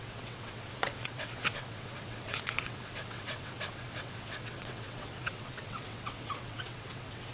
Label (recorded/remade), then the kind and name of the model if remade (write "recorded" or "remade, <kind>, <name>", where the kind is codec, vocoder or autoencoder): remade, vocoder, WaveNeXt